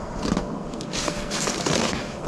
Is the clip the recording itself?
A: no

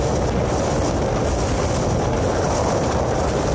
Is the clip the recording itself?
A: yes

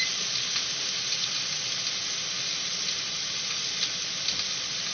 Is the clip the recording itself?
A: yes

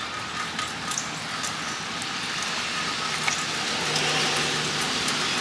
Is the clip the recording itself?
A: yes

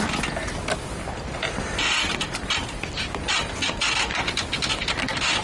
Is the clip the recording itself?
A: no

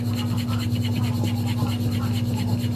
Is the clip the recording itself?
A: yes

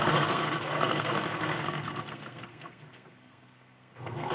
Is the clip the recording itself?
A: no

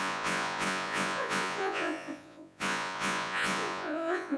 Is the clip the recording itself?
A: no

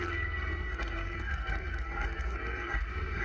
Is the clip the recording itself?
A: no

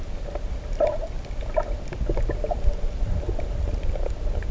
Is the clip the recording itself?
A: yes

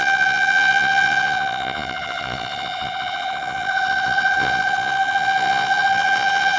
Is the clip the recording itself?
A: no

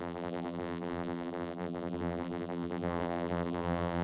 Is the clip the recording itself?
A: no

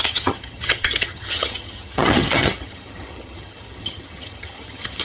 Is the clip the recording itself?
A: no